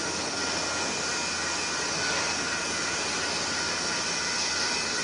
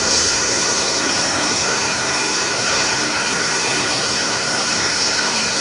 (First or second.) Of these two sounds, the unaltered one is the first